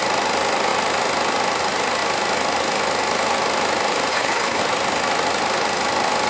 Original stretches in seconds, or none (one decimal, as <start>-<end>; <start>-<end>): 0.0-4.1; 4.6-6.3